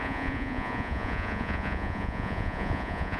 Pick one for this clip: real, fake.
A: fake